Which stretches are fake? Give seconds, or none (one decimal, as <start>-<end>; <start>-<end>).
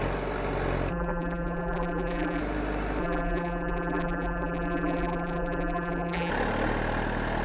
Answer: 0.9-2.4; 3.0-6.3